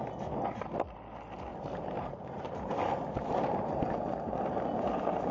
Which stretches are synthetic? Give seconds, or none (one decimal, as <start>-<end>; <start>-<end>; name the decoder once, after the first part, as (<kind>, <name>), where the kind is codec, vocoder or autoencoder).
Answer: 1.5-3.8 (vocoder, BigVGAN v2)